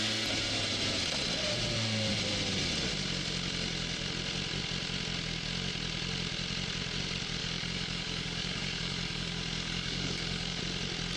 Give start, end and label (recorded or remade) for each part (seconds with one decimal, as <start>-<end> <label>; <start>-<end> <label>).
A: 0.0-7.4 recorded; 7.4-10.6 remade; 10.6-11.2 recorded

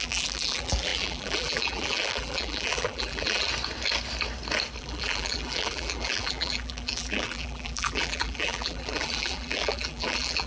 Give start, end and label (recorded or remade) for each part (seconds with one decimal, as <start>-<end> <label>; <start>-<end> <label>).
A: 0.0-3.5 remade; 3.5-4.8 recorded; 4.8-10.5 remade

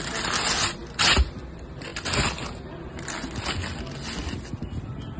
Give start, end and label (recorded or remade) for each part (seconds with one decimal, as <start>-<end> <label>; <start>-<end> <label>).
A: 0.0-5.2 recorded

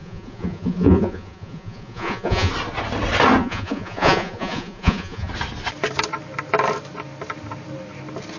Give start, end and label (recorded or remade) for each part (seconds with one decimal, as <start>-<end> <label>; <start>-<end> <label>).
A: 0.0-2.5 remade; 2.5-3.4 recorded; 3.4-5.3 remade; 5.3-8.4 recorded